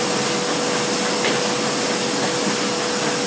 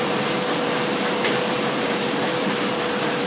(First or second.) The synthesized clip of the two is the second